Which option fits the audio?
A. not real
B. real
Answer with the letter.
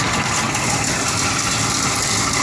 B